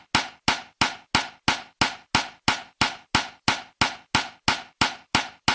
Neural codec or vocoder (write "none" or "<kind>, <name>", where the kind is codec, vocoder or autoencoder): none